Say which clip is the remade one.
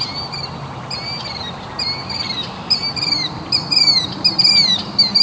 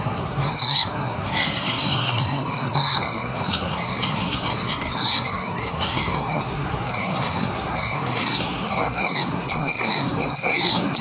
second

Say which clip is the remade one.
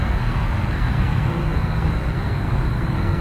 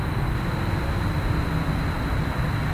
first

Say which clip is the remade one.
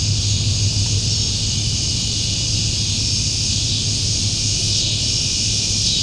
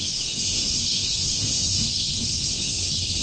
second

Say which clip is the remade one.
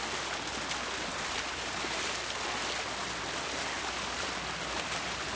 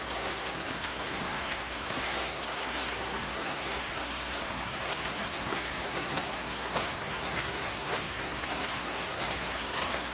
second